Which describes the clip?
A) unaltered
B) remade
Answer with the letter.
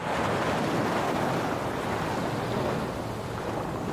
A